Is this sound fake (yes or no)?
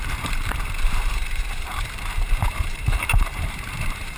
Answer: yes